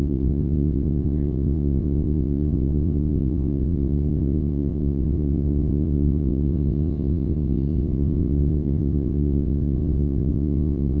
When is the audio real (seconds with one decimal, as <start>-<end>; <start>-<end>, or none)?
none